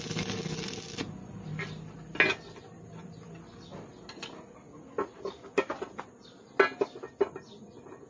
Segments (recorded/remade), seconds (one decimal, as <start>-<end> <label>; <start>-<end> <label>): 0.0-8.1 recorded